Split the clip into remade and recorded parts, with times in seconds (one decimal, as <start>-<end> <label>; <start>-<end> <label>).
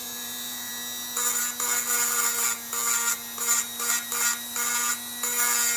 0.0-0.7 remade; 0.7-5.8 recorded